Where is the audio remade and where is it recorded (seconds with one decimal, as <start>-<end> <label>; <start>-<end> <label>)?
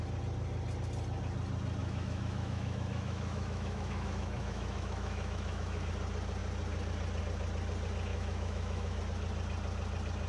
0.0-1.8 recorded; 1.8-5.9 remade; 5.9-8.1 recorded; 8.1-9.0 remade; 9.0-10.3 recorded